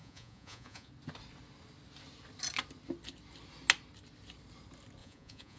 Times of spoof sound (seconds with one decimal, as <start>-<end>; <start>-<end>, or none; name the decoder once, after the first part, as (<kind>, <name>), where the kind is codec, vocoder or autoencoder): 0.0-0.9 (vocoder, Vocos); 5.0-5.6